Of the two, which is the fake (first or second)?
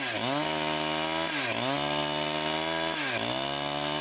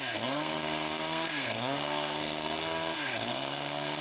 second